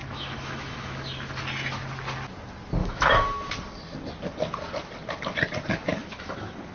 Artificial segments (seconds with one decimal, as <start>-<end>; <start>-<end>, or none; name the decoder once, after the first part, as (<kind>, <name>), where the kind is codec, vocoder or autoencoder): 0.0-1.3 (autoencoder, DAC-VAE); 2.8-3.5; 5.9-6.7